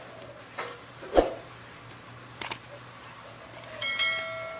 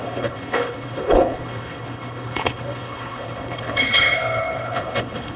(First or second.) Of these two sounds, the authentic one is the first